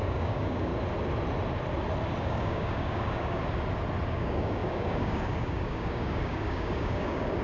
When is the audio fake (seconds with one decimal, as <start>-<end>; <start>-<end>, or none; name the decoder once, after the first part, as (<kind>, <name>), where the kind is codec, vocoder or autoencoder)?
0.0-0.7 (codec, DAC); 2.2-3.4; 4.1-7.4